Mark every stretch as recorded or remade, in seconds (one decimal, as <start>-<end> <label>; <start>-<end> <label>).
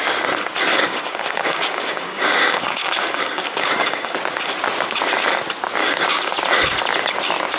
0.0-0.7 recorded; 0.7-4.2 remade; 4.2-5.8 recorded; 5.8-6.3 remade; 6.3-7.6 recorded